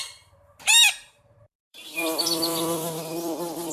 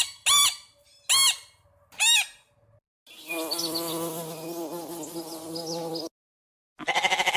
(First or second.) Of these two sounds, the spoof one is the first